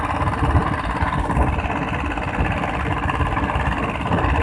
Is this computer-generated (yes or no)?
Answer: no